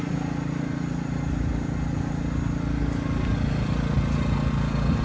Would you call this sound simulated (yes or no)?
no